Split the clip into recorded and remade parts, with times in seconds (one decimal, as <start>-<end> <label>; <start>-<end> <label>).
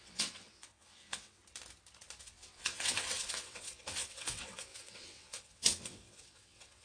0.0-1.4 remade; 1.4-2.2 recorded; 2.2-6.8 remade